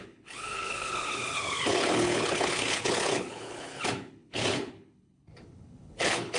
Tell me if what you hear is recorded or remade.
remade